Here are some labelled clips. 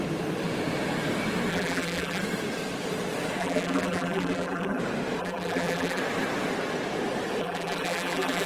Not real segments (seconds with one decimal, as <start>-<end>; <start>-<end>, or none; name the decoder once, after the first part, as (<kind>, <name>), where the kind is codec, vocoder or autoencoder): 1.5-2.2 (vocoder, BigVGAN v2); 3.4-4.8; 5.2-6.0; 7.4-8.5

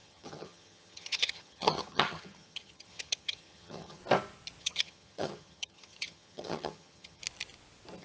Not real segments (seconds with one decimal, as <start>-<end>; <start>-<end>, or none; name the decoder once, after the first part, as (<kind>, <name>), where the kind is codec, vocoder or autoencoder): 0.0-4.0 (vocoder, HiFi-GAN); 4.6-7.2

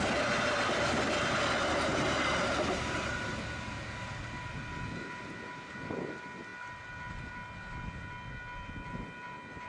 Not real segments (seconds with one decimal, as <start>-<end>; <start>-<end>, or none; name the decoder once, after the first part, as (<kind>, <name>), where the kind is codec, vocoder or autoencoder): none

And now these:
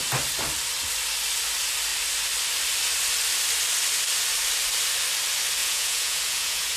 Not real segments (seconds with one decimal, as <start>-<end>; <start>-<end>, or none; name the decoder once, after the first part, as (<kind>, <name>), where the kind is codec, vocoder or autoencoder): 5.6-6.8 (vocoder, Vocos)

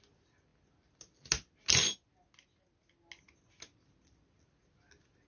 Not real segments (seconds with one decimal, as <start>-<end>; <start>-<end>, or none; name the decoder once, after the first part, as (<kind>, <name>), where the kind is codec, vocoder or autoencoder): none

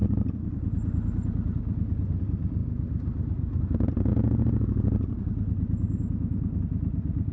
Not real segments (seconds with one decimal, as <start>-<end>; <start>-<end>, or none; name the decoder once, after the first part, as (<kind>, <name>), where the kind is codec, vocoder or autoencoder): 2.2-2.6 (vocoder, BigVGAN v2); 3.6-4.1; 6.6-7.3

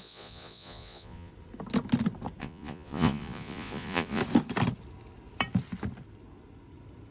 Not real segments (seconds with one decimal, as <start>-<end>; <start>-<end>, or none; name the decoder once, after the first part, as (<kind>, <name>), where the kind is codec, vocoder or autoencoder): 0.0-1.3 (vocoder, Vocos); 2.4-4.2